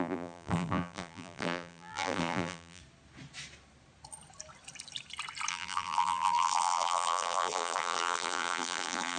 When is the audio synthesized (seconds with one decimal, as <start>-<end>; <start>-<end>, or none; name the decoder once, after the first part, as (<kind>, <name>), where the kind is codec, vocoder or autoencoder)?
0.0-2.8 (vocoder, BigVGAN v2); 5.5-9.2

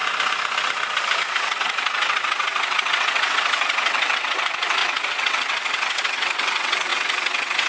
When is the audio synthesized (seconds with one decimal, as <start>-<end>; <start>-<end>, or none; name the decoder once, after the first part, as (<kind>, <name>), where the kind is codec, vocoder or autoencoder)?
1.2-7.7 (vocoder, WaveNeXt)

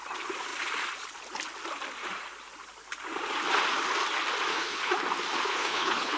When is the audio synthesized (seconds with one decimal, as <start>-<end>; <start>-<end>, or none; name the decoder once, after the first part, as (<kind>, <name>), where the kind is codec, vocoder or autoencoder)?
4.5-5.0 (codec, HILCodec); 5.5-6.2